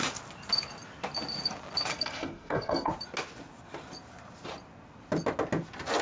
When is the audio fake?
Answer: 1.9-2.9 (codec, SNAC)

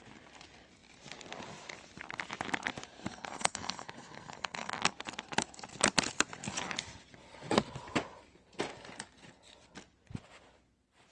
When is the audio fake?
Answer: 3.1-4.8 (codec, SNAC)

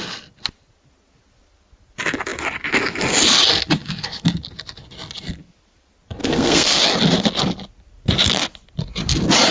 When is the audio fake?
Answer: 6.2-6.8 (codec, SNAC)